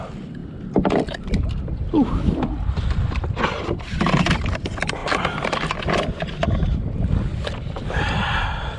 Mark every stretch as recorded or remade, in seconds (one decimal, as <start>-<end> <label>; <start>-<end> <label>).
0.0-8.8 recorded